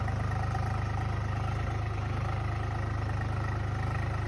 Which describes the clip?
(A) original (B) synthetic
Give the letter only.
A